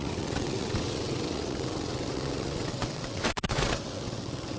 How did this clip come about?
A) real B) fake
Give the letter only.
B